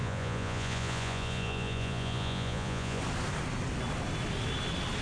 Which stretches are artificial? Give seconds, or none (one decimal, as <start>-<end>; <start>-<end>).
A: 0.0-3.0